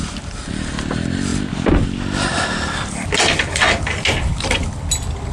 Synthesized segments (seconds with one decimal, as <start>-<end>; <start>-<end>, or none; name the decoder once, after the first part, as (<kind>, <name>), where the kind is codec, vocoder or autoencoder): none